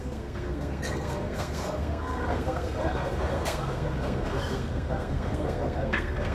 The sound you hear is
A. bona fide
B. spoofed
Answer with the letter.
B